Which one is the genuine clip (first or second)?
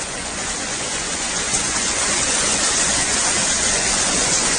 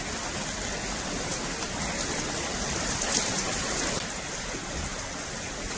second